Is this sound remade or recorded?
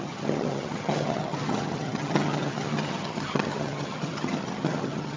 remade